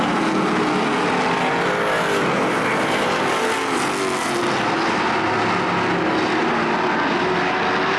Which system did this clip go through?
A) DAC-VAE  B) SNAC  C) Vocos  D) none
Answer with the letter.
D